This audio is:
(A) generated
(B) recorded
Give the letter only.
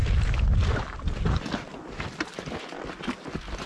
B